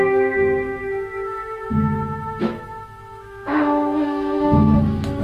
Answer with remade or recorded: remade